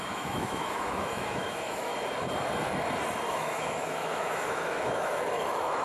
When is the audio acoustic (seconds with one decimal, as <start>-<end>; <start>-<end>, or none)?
1.9-3.3